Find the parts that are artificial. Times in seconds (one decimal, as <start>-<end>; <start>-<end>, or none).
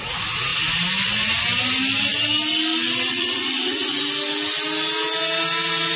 3.1-4.0